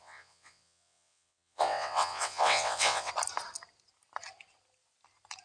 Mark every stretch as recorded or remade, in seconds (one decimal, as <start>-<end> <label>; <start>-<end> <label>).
0.0-3.1 remade; 3.1-5.4 recorded